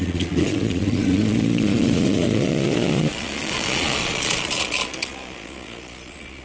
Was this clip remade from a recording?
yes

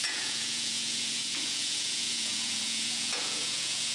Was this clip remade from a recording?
yes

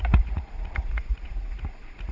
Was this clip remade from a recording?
yes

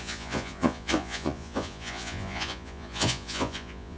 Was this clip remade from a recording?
yes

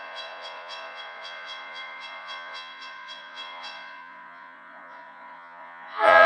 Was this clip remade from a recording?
yes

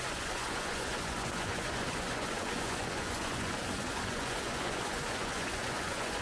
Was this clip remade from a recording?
yes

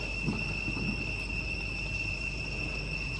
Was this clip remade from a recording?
no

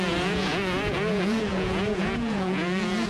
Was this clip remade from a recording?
yes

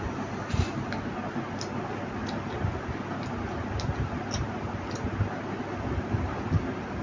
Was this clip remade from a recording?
no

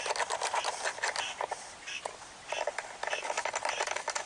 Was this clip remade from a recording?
no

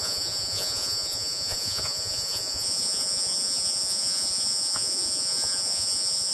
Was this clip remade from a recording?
yes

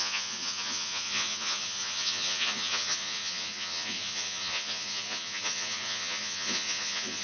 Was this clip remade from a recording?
yes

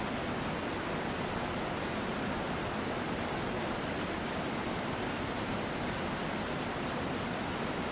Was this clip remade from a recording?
no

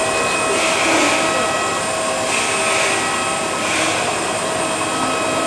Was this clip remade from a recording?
no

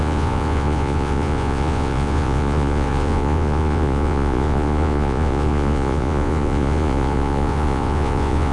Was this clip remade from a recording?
yes